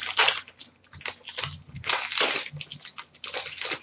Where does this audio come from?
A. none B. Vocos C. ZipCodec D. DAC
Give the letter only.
A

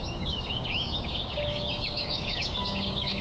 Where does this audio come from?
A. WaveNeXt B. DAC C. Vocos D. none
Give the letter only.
B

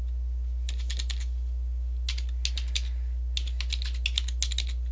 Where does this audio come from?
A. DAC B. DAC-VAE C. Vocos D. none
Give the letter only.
D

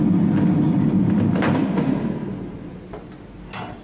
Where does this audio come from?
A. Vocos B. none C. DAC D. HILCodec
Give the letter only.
B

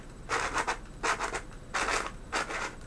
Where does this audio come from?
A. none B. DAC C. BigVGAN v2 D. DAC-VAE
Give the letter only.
A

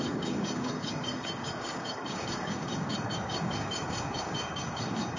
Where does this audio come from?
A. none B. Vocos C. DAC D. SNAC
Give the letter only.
C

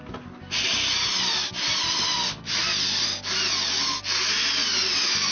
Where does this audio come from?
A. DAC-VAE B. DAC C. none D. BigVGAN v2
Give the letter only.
C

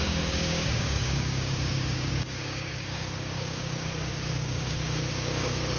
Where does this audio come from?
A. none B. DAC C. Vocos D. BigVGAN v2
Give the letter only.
B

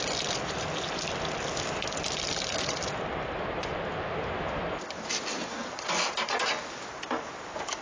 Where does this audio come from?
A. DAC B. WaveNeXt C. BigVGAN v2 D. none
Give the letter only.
D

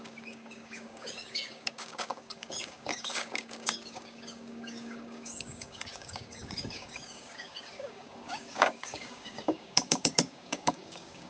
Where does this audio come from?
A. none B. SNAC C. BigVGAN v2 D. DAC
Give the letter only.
D